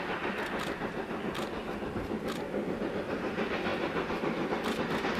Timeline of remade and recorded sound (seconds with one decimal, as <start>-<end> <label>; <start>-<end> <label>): 0.0-5.2 recorded